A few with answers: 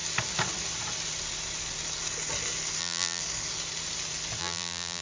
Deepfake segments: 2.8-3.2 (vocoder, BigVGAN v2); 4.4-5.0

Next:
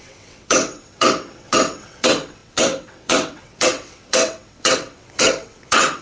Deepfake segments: 0.0-6.0 (vocoder, WaveNeXt)

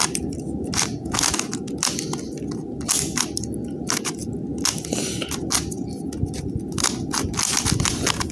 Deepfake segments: none

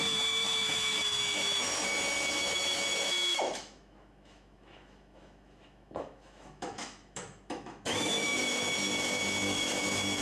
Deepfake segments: 0.0-10.2 (autoencoder, DAC-VAE)

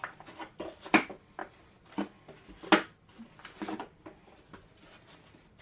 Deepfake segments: none

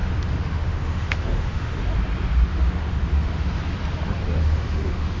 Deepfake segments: 0.0-1.8 (autoencoder, DAC-VAE); 2.5-3.6; 4.4-5.2

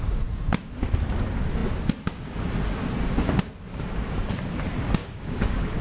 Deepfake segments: 5.0-5.8 (codec, DAC)

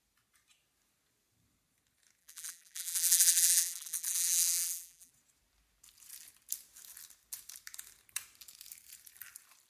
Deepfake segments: 2.2-5.1 (vocoder, BigVGAN v2)